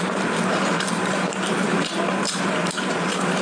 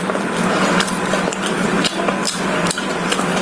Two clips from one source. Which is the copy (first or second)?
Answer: first